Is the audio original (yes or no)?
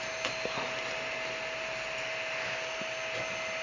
yes